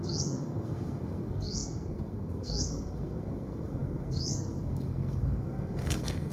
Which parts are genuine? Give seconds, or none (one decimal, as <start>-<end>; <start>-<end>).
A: none

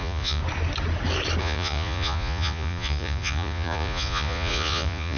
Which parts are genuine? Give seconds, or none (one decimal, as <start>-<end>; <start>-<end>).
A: 0.4-1.4

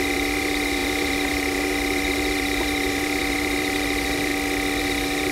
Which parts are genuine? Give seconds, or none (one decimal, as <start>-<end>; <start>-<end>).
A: 4.3-4.8

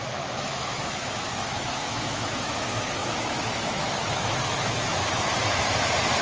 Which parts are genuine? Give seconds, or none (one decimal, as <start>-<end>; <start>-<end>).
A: 5.3-6.2

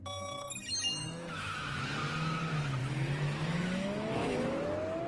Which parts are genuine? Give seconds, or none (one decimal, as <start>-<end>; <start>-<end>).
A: 0.0-1.0; 1.8-2.8; 4.6-5.1

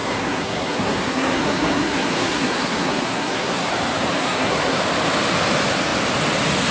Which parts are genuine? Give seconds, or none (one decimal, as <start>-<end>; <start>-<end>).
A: 3.7-4.2; 4.8-6.7

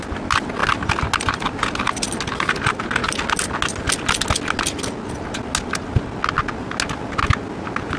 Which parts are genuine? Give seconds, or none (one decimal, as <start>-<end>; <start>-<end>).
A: 0.0-8.0

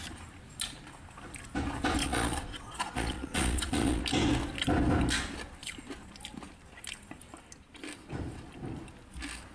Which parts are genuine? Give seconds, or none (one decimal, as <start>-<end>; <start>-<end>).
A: 0.0-2.0; 4.0-9.5